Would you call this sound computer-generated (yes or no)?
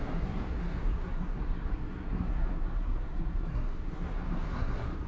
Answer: yes